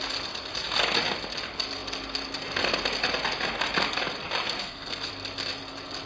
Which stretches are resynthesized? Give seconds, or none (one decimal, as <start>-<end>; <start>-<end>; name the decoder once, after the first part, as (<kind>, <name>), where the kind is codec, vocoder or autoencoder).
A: 4.6-5.1 (codec, SNAC)